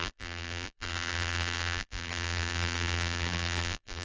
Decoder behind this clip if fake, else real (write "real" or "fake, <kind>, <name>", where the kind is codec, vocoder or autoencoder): fake, vocoder, BigVGAN v2